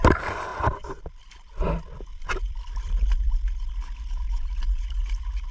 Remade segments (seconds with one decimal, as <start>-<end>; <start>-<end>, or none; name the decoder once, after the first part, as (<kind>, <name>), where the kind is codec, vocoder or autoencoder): 0.5-1.1 (vocoder, BigVGAN v2); 2.1-3.2